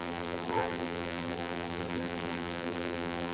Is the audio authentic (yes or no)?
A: no